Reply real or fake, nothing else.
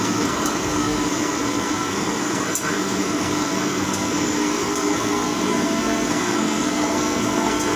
fake